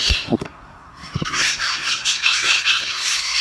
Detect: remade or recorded remade